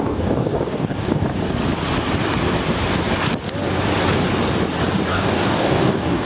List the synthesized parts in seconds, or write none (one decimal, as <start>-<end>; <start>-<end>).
0.0-1.3; 5.1-6.3